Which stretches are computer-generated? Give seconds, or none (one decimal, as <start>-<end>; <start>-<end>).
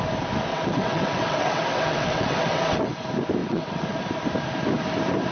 0.5-2.9; 3.4-4.0